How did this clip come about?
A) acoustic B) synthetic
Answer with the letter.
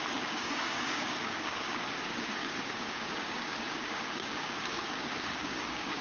B